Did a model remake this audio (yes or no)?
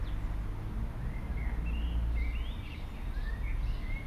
no